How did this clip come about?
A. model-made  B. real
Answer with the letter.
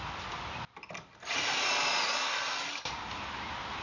B